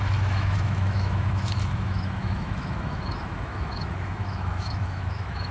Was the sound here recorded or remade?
remade